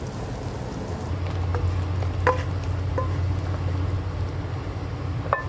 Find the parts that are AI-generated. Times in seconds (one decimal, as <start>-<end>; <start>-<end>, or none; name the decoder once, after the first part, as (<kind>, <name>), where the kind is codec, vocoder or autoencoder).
none